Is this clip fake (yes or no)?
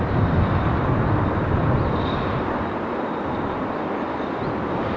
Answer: no